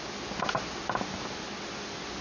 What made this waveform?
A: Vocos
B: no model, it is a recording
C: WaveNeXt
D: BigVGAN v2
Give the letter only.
B